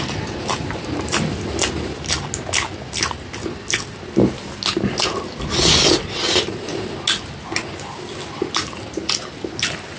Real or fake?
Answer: real